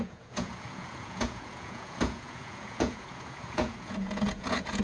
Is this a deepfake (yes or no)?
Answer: yes